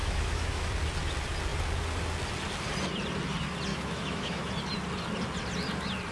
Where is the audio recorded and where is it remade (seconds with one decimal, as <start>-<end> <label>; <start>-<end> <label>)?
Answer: 0.0-0.7 remade; 0.7-3.7 recorded; 3.7-4.5 remade; 4.5-6.1 recorded